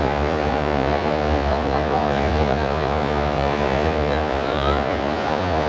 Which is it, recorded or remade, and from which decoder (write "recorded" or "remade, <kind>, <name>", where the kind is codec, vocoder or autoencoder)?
remade, vocoder, Vocos